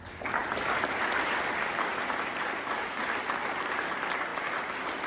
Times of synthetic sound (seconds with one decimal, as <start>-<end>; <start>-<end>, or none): none